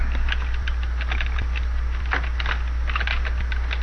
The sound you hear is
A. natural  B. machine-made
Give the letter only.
A